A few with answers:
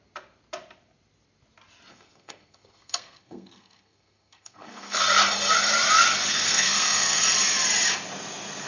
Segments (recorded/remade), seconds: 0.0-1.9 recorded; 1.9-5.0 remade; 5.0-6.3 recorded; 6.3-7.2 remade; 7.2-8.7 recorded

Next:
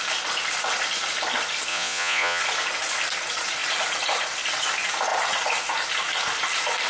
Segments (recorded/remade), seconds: 0.0-1.7 recorded; 1.7-2.4 remade; 2.4-6.9 recorded